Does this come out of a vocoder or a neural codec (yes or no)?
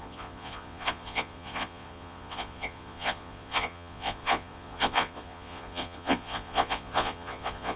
yes